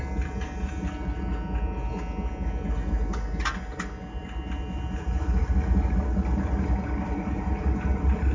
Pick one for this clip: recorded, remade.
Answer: recorded